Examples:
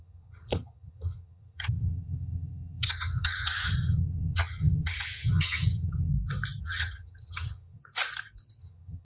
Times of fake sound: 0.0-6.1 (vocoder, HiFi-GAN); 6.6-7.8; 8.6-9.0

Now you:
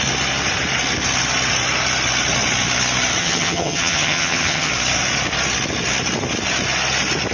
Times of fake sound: 3.2-4.7 (vocoder, HiFi-GAN)

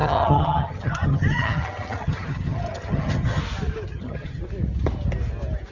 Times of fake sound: 0.0-3.4 (vocoder, HiFi-GAN); 3.9-4.4

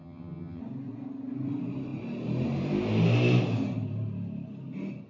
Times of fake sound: 0.0-0.6 (vocoder, HiFi-GAN)